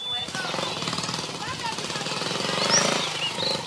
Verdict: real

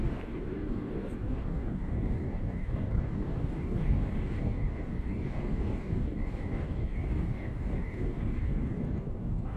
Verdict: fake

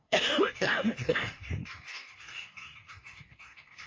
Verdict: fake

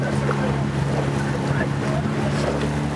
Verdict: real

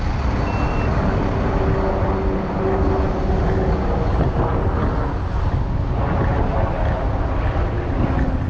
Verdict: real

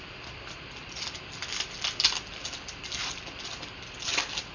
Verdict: real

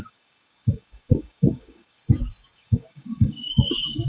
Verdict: fake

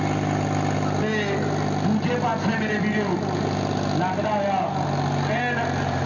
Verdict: real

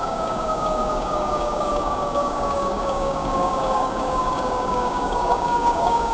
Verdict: fake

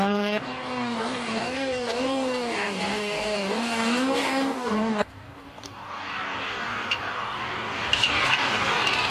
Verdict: fake